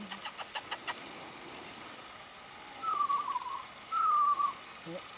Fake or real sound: real